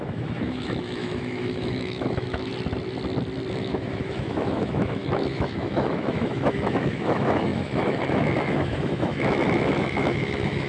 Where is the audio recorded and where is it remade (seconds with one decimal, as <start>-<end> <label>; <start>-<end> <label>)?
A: 0.0-2.5 remade; 2.5-3.5 recorded; 3.5-10.7 remade